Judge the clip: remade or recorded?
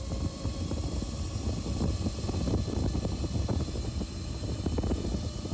recorded